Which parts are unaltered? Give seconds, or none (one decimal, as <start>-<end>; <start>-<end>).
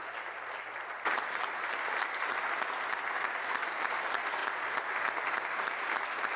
0.0-6.4